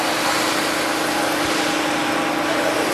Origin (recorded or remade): recorded